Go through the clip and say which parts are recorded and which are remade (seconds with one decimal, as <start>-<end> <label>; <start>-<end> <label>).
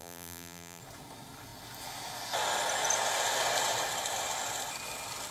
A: 0.0-0.8 remade; 0.8-5.3 recorded